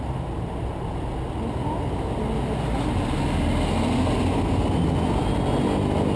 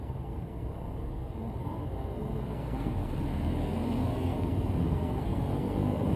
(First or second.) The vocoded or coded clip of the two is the second